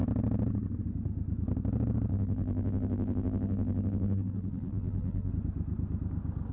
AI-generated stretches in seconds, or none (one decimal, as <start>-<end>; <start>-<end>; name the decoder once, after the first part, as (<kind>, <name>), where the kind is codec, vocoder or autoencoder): 2.1-5.3 (vocoder, BigVGAN v2)